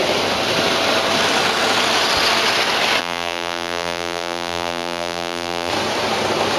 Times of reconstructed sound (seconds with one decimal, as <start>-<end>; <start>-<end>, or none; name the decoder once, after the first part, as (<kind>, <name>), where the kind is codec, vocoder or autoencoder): 3.0-5.7 (vocoder, BigVGAN v2)